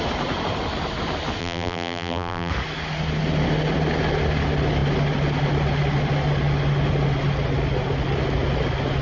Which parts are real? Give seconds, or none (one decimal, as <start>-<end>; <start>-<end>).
0.0-1.4; 2.5-9.0